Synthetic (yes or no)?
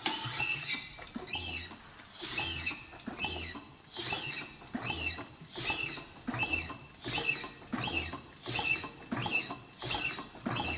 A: no